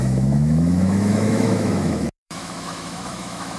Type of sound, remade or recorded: remade